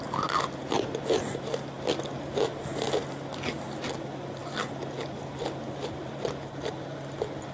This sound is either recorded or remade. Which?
recorded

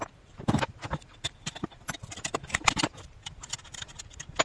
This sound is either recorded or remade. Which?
remade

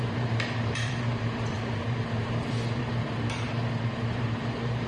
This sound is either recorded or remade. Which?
remade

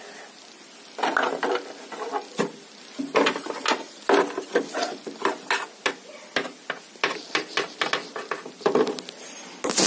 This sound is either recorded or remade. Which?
recorded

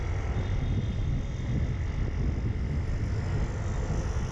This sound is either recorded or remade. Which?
recorded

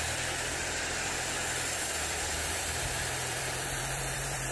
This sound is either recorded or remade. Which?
remade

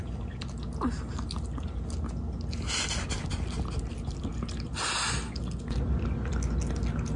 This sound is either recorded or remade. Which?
recorded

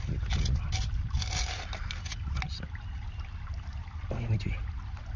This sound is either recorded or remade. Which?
recorded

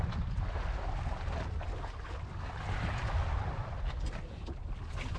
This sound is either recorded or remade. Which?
recorded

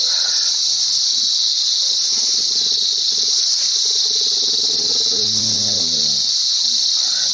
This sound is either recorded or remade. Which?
remade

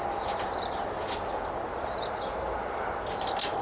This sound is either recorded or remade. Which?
recorded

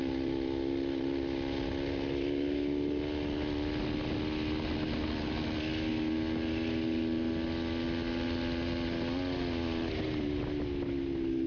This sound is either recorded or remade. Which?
recorded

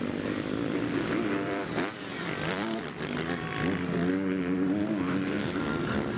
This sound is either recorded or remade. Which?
remade